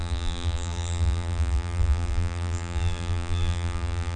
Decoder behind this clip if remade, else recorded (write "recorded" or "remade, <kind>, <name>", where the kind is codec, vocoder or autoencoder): remade, vocoder, BigVGAN v2